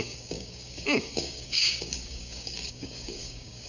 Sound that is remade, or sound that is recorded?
remade